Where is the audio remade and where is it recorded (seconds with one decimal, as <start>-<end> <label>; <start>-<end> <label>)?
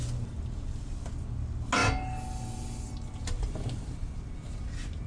0.0-5.1 recorded